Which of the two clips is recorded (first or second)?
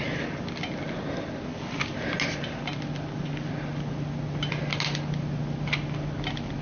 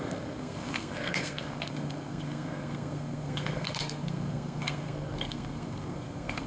first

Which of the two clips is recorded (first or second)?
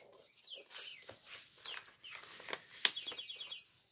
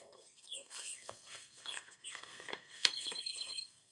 first